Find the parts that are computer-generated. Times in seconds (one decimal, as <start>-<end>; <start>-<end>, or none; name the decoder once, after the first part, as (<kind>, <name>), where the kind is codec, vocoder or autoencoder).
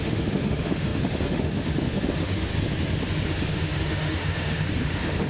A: 0.0-2.5 (autoencoder, DAC-VAE); 3.3-5.3